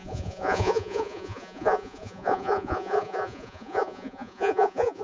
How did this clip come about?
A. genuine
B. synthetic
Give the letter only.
B